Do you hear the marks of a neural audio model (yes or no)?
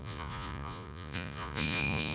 yes